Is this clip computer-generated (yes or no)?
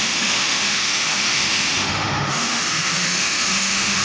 yes